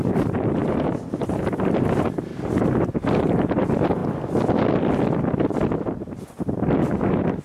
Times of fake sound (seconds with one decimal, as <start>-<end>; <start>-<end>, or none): 0.0-4.0; 6.8-7.4

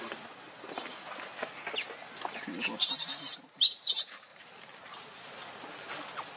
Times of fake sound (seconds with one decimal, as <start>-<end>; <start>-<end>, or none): 0.0-0.8; 2.3-4.3

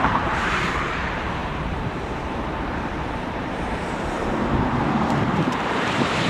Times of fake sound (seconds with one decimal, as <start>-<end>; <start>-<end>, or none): 0.0-6.3

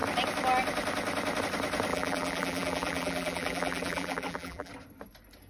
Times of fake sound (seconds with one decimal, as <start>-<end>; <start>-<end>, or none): 1.9-4.7

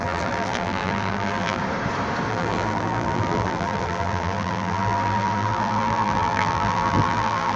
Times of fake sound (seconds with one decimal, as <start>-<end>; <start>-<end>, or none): 0.0-1.6; 2.3-7.6

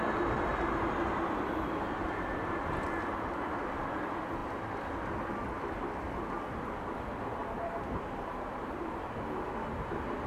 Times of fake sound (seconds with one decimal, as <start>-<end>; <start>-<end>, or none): 0.5-2.6; 7.4-9.2

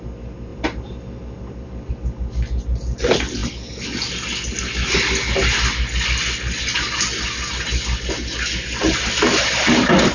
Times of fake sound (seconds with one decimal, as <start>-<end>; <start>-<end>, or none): 0.5-1.9